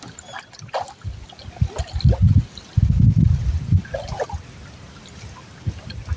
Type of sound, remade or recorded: recorded